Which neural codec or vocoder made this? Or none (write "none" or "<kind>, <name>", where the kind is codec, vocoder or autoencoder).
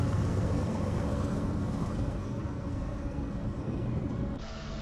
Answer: codec, SNAC